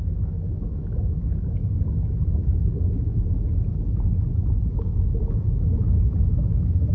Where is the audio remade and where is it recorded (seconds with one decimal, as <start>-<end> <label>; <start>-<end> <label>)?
0.0-1.3 remade; 1.3-1.9 recorded; 1.9-3.5 remade; 3.5-5.2 recorded; 5.2-6.9 remade